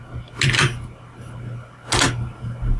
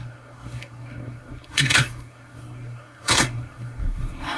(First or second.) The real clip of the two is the first